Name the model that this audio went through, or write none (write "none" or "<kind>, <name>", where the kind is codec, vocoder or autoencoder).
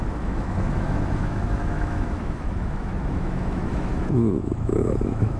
autoencoder, DAC-VAE